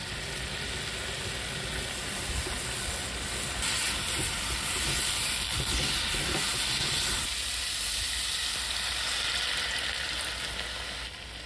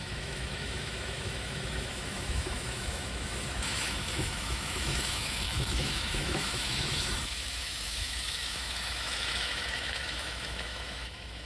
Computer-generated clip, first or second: second